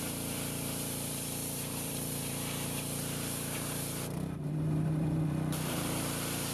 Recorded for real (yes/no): no